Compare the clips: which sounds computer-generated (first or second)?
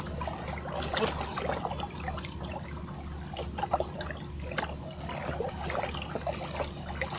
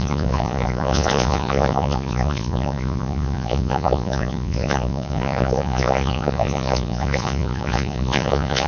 second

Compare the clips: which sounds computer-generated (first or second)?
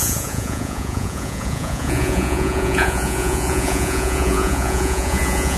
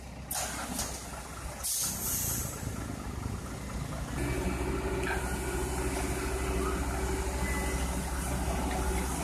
first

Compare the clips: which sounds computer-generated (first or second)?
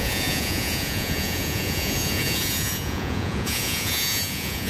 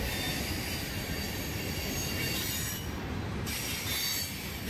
first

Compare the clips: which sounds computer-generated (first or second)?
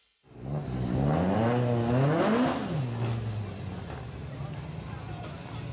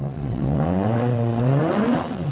second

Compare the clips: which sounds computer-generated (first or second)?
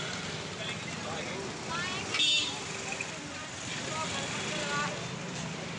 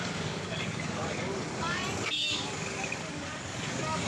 second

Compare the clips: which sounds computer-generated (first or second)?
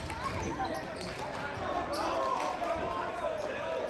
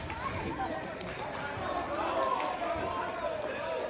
second